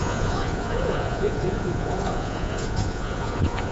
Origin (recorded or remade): remade